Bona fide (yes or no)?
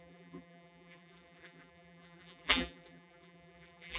no